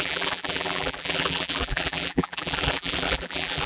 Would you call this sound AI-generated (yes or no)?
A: yes